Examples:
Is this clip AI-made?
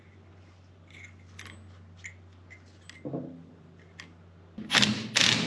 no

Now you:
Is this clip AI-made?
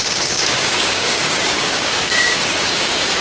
yes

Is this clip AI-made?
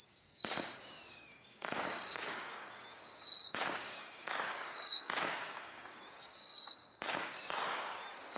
yes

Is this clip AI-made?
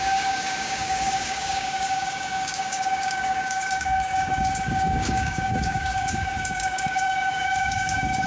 yes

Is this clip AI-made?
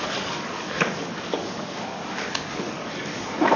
yes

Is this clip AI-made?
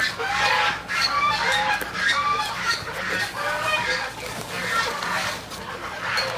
yes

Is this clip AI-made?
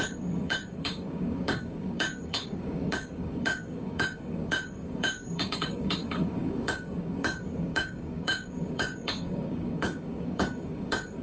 yes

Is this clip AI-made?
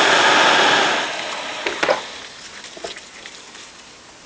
no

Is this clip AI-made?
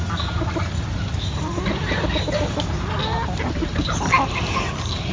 no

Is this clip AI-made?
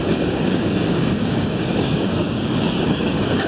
yes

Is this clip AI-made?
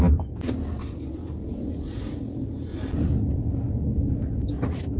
no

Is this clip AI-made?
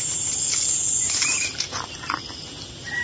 no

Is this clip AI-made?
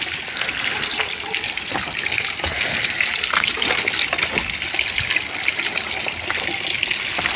no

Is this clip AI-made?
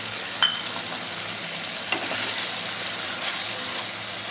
no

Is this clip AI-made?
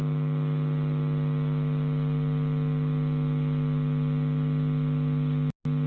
no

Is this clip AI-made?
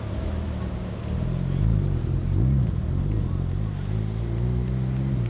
no